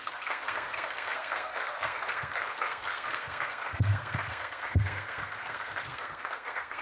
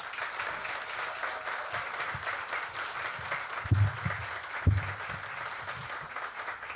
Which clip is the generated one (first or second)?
first